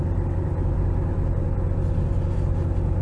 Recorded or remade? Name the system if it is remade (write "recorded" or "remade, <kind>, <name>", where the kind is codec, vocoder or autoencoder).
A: recorded